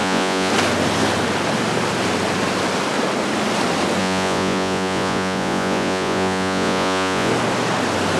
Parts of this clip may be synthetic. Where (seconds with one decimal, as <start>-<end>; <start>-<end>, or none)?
0.0-0.5; 4.0-7.3